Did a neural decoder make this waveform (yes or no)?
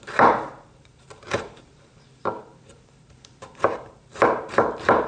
yes